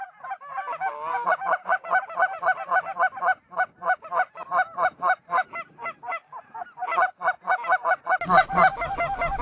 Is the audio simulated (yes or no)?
no